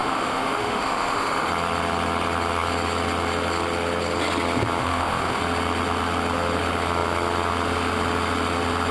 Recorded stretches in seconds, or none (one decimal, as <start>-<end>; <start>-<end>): 1.5-4.8; 5.4-8.9